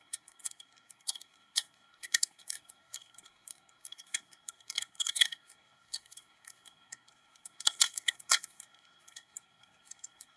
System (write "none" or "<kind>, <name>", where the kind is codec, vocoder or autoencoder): codec, SNAC